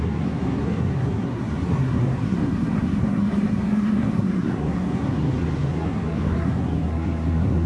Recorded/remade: remade